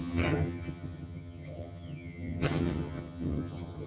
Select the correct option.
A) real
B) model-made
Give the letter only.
B